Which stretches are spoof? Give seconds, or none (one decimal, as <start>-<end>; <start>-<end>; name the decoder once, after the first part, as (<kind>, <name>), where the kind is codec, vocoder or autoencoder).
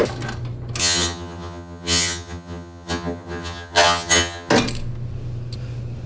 0.8-4.5 (vocoder, HiFi-GAN)